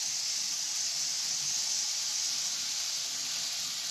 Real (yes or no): yes